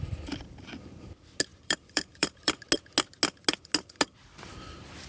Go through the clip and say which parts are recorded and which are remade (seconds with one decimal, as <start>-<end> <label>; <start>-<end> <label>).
0.0-1.5 recorded; 1.5-2.6 remade; 2.6-5.1 recorded